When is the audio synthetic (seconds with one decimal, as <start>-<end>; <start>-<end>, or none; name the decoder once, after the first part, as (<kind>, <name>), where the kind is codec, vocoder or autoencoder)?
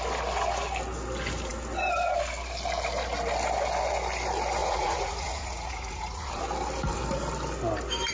4.6-6.4 (vocoder, Vocos)